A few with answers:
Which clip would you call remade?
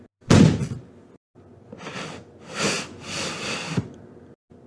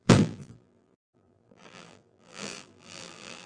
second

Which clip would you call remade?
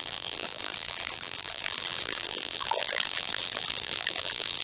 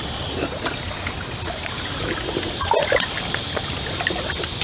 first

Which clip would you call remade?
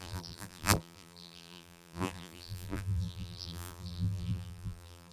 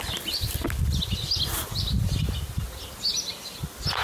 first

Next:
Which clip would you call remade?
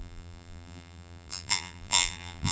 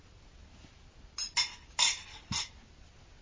first